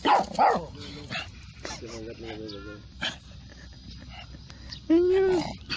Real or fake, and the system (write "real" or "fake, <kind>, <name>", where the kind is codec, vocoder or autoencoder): real